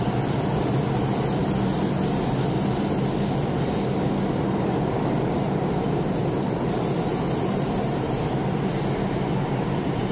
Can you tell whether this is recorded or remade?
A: recorded